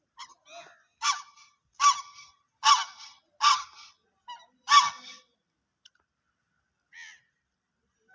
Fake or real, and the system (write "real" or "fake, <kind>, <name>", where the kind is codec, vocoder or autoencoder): real